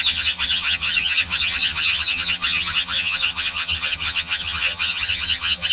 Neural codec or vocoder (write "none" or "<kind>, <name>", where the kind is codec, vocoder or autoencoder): vocoder, HiFi-GAN